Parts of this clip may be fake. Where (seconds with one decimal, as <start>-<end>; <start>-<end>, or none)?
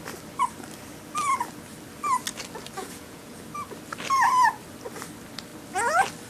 2.8-3.4